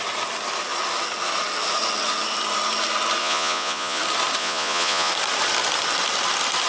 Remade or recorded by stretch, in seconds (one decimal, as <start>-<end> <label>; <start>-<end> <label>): 0.0-3.2 recorded; 3.2-4.0 remade; 4.0-4.4 recorded; 4.4-5.1 remade; 5.1-6.7 recorded